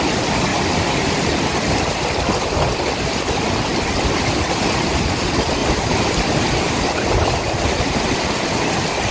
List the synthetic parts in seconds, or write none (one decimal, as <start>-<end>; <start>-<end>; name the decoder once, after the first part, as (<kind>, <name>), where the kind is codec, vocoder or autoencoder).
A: 0.5-1.1 (vocoder, BigVGAN v2); 3.7-4.3; 5.6-6.5